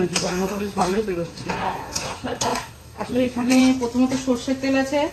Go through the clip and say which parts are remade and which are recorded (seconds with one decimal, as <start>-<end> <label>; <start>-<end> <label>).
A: 0.0-3.6 remade; 3.6-5.1 recorded